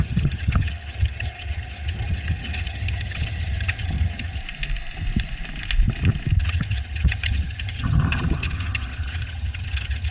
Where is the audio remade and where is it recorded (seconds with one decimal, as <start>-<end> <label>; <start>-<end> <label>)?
0.0-4.4 remade; 4.4-6.4 recorded; 6.4-10.1 remade